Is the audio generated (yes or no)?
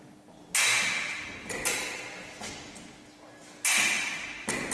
no